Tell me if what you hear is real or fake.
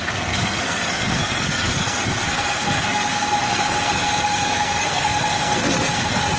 fake